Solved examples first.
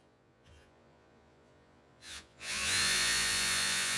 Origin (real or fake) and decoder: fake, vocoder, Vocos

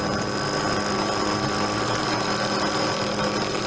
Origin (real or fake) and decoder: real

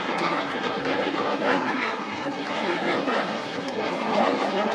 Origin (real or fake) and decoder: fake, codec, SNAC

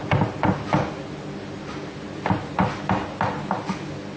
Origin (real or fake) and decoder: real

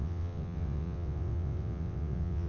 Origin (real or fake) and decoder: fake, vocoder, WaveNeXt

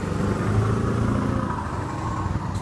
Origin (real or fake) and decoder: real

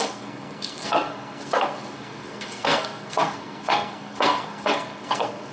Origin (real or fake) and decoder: fake, codec, SNAC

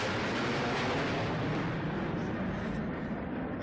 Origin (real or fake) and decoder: real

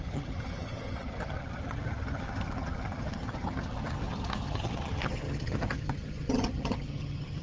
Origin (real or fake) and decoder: fake, vocoder, HiFi-GAN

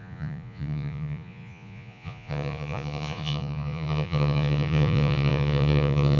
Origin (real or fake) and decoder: fake, vocoder, Vocos